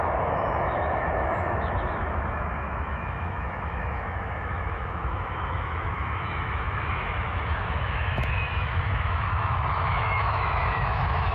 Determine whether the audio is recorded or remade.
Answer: remade